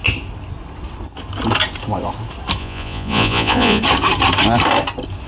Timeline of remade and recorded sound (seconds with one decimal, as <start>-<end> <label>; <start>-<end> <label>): 0.0-2.6 recorded; 2.6-3.8 remade; 3.8-5.3 recorded

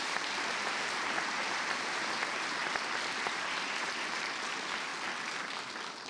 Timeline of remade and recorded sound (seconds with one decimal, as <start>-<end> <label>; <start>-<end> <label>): 0.0-2.6 remade; 2.6-3.3 recorded; 3.3-4.9 remade; 4.9-6.1 recorded

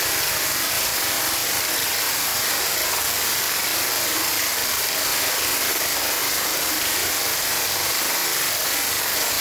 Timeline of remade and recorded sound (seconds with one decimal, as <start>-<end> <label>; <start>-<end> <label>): 0.0-9.4 recorded

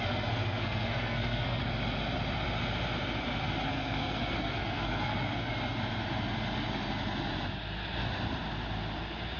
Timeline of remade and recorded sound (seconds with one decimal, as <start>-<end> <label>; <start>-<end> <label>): 0.0-1.6 remade; 1.6-3.7 recorded; 3.7-5.5 remade; 5.5-9.4 recorded

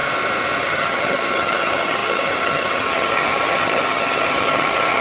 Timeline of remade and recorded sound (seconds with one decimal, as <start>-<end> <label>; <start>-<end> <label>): 0.0-0.6 recorded; 0.6-5.0 remade

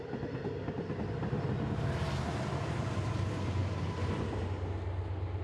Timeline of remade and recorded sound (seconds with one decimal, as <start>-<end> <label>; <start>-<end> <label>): 0.0-5.4 recorded

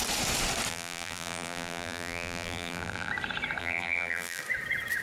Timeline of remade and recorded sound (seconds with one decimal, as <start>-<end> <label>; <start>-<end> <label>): 0.0-0.7 recorded; 0.7-3.1 remade; 3.1-3.6 recorded; 3.6-4.4 remade; 4.4-5.0 recorded

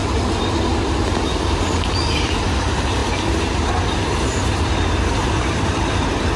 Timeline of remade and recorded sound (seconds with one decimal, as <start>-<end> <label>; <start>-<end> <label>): 0.0-1.7 recorded; 1.7-6.4 remade